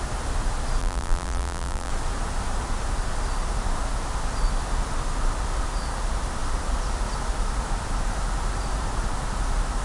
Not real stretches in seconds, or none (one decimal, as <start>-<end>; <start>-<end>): 0.8-1.9